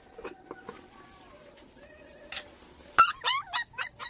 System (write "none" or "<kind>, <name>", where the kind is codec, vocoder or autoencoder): none